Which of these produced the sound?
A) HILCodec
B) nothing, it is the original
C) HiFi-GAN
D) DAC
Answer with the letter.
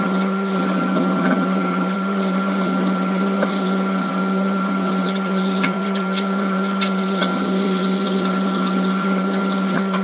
C